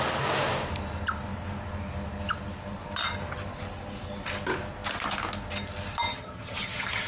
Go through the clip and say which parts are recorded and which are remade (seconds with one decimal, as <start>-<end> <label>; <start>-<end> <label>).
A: 0.0-6.1 recorded; 6.1-7.1 remade